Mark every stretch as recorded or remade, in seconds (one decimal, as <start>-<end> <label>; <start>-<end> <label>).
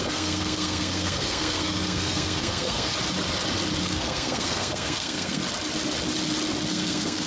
0.0-2.9 remade; 2.9-3.8 recorded; 3.8-5.4 remade; 5.4-6.7 recorded; 6.7-7.3 remade